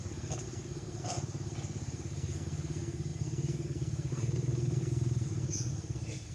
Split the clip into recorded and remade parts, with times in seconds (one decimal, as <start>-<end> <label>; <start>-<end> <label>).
0.0-6.3 remade